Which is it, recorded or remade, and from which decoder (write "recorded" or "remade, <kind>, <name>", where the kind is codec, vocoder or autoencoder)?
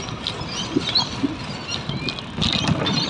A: recorded